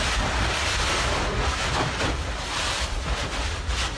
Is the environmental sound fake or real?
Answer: real